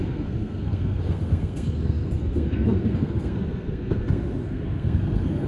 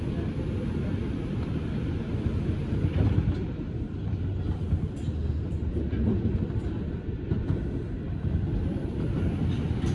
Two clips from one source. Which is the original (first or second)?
second